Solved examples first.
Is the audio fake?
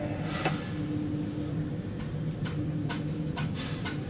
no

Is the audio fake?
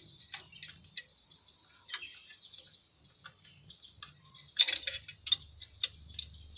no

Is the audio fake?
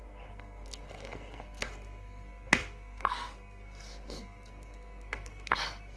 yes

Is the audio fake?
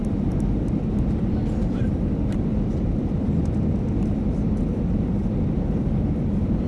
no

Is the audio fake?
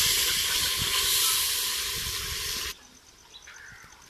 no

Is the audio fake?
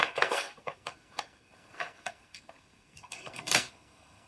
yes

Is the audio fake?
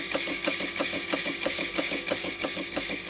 yes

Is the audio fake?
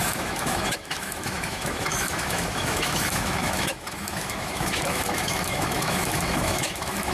yes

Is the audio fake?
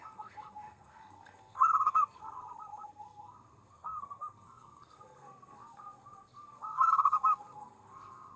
yes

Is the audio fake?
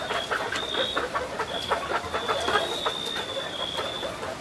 no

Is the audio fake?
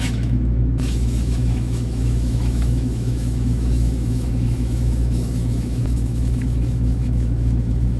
yes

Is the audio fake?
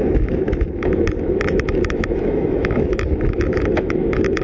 yes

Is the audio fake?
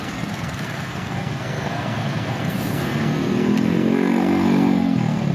yes